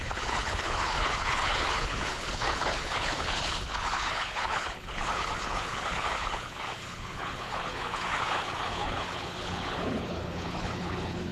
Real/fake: fake